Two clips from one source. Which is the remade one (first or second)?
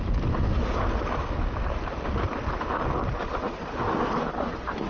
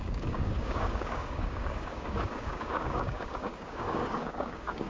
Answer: second